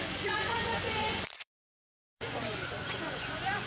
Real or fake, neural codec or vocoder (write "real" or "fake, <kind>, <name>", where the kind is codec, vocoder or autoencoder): fake, vocoder, Vocos